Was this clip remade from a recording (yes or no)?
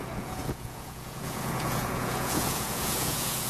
yes